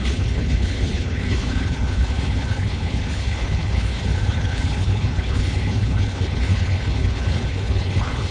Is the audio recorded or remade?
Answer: remade